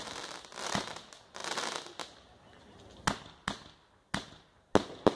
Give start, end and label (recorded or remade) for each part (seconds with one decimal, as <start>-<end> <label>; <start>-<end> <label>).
0.0-5.2 recorded